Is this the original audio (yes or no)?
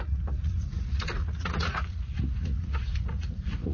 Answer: no